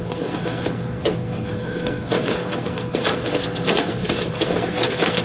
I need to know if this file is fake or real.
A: fake